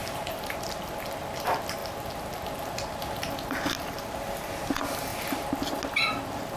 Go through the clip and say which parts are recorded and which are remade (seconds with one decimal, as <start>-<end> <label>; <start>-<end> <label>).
0.0-6.6 recorded